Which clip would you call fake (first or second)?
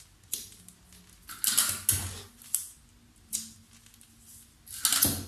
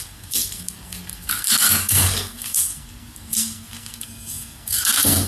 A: second